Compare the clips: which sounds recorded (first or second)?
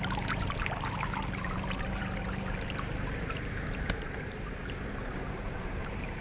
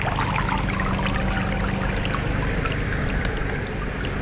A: second